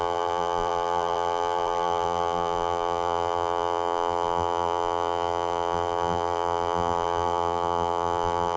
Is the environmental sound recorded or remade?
remade